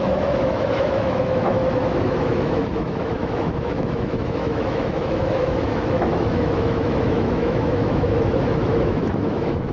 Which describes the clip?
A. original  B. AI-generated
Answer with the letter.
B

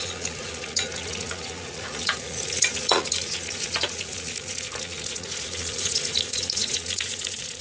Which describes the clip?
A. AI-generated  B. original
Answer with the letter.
A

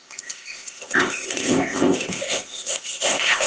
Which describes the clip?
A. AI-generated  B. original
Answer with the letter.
A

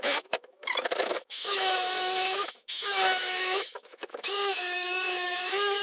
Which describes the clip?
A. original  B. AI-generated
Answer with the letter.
B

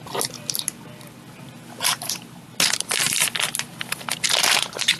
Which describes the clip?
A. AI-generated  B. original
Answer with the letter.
B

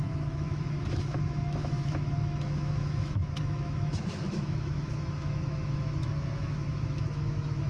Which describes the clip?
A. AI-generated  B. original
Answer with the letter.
A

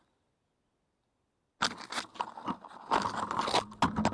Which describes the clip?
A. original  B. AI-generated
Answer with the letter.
A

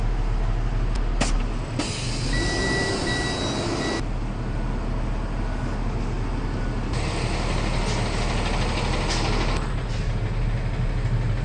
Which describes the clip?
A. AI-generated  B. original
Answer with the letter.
B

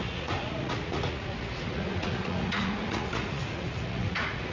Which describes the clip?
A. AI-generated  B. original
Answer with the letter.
A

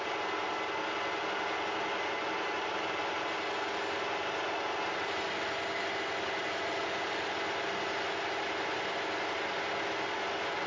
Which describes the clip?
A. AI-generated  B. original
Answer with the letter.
B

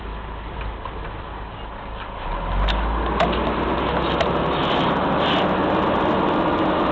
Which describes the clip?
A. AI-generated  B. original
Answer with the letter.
B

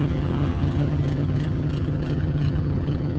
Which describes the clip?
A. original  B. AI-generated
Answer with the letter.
B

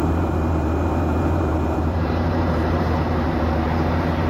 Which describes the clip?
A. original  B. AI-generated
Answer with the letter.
B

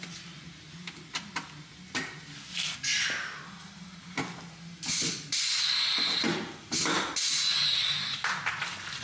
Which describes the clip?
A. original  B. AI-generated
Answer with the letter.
A